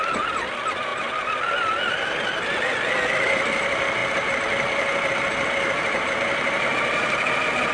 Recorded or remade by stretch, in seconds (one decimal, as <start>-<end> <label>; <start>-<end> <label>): 0.0-7.7 recorded